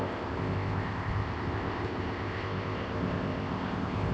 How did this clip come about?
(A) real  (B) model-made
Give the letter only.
B